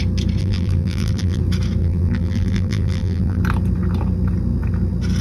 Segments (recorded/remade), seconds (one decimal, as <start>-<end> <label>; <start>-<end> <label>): 0.0-0.4 recorded; 0.4-1.4 remade; 1.4-1.8 recorded; 1.8-3.4 remade; 3.4-5.2 recorded